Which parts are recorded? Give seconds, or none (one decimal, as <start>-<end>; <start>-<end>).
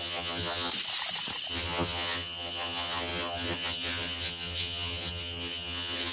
0.7-1.5